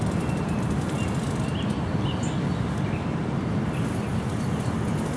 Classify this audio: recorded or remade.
recorded